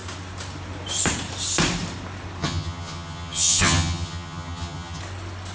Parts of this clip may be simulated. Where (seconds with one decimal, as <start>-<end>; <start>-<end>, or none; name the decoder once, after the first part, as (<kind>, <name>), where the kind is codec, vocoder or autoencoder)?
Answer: 2.4-5.0 (vocoder, HiFi-GAN)